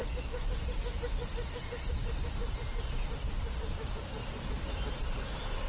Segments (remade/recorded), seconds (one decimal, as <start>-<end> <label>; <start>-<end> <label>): 0.0-5.7 recorded